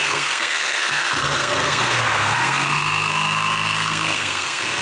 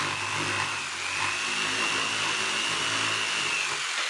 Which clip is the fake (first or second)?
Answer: first